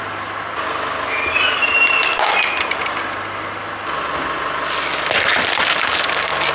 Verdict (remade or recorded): recorded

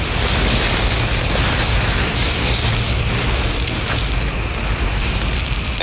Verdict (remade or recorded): recorded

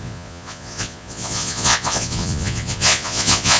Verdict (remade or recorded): remade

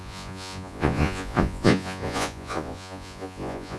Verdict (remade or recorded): remade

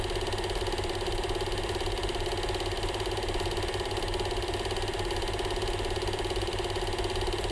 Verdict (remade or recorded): recorded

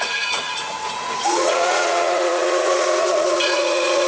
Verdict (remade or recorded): remade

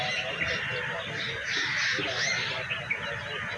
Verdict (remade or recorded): recorded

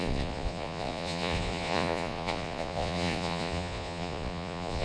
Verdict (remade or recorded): remade